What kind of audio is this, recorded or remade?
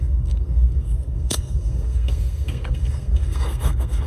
remade